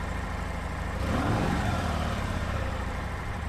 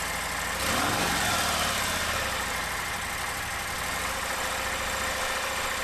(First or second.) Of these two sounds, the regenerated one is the first